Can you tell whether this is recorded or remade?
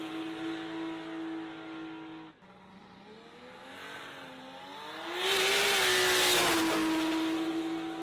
recorded